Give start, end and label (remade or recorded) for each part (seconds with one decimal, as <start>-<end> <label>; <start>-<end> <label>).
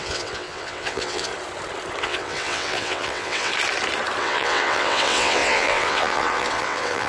0.0-1.3 remade; 1.3-2.0 recorded; 2.0-3.5 remade; 3.5-4.2 recorded; 4.2-7.1 remade